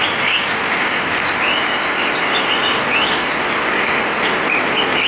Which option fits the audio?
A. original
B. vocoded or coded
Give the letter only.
A